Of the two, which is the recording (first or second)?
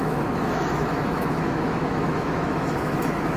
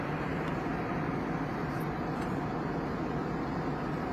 second